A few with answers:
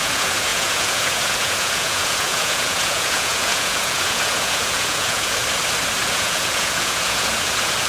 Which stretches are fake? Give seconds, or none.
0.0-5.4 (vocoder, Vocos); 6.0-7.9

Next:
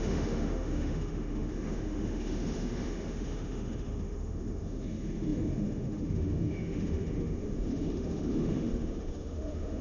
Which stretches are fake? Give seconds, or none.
0.0-9.8 (autoencoder, DAC-VAE)